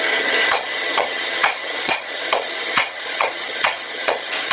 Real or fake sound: fake